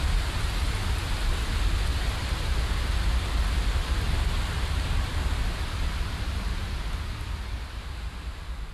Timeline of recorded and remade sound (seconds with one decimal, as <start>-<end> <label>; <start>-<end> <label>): 0.0-7.8 recorded; 7.8-8.7 remade